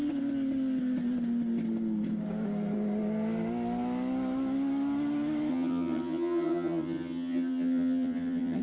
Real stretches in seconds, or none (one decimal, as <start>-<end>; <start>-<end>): 0.0-5.5